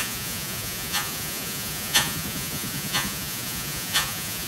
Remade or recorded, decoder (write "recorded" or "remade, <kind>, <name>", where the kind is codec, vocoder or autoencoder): remade, vocoder, Vocos